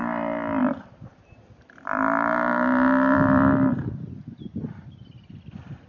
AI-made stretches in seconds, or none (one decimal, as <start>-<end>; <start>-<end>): 0.6-4.1